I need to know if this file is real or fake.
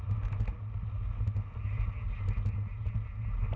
real